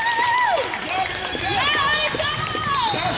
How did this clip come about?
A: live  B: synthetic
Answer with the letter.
A